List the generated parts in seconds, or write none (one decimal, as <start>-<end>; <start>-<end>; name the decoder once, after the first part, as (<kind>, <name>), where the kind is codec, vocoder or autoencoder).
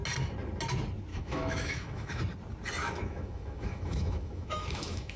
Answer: 1.1-2.2 (autoencoder, DAC-VAE); 2.8-5.2